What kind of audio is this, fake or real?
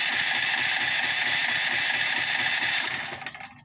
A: real